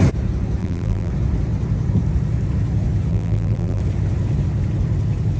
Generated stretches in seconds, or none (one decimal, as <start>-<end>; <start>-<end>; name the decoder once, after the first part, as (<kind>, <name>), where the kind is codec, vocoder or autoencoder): 0.6-1.1 (vocoder, BigVGAN v2); 3.1-3.8

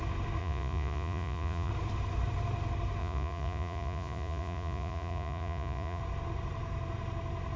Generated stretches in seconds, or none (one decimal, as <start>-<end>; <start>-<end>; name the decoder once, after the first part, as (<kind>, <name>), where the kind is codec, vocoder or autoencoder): 0.4-1.7 (vocoder, Vocos); 3.0-6.0

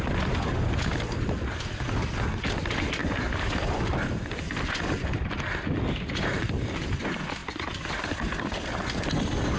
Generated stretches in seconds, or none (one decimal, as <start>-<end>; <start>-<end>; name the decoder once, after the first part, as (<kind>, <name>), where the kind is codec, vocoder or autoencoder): 3.0-4.4 (vocoder, BigVGAN v2); 7.4-9.1

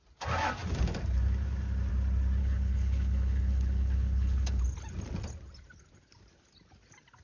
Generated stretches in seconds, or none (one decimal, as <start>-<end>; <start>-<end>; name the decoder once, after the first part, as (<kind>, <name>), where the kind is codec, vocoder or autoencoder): 2.4-4.6 (codec, HILCodec)